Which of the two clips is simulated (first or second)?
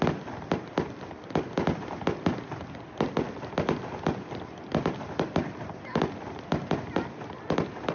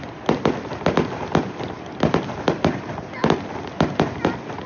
first